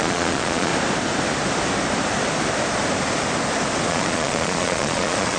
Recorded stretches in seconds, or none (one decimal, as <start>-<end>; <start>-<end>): 0.7-3.9